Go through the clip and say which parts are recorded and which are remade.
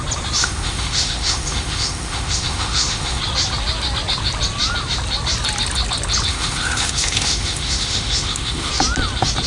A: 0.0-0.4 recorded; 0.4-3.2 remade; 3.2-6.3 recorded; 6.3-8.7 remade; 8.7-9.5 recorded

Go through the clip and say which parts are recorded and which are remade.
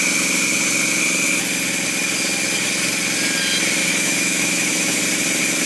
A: 0.0-3.8 recorded; 3.8-5.0 remade; 5.0-5.7 recorded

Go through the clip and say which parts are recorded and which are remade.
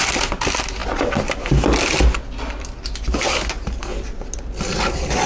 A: 0.0-5.3 recorded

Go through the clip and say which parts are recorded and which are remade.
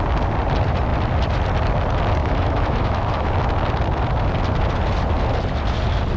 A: 0.0-2.2 recorded; 2.2-3.3 remade; 3.3-6.2 recorded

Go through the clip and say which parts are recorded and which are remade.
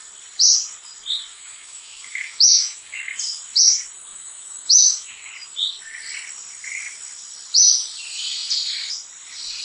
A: 0.0-1.3 recorded; 1.3-3.0 remade; 3.0-4.1 recorded; 4.1-5.3 remade; 5.3-9.6 recorded